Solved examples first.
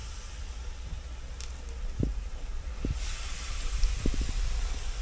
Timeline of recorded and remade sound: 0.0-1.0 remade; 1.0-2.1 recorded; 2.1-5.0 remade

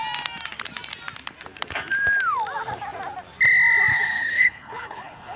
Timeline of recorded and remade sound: 0.0-3.9 recorded; 3.9-5.4 remade

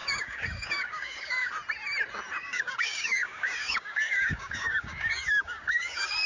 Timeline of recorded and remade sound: 0.0-1.5 remade; 1.5-2.4 recorded; 2.4-6.3 remade

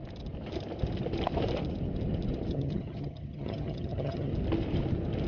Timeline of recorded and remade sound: 0.0-2.5 recorded; 2.5-4.3 remade; 4.3-5.3 recorded

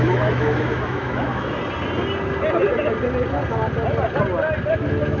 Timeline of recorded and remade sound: 0.0-1.6 remade; 1.6-4.7 recorded; 4.7-5.2 remade

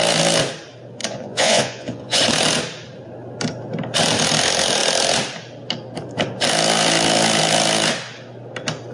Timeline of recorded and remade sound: 0.0-1.0 recorded; 1.0-2.2 remade; 2.2-8.9 recorded

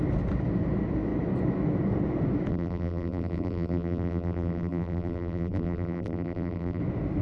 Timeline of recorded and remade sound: 0.0-2.5 recorded; 2.5-6.8 remade; 6.8-7.2 recorded

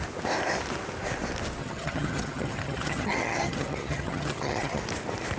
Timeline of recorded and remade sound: 0.0-1.6 recorded; 1.6-4.8 remade; 4.8-5.4 recorded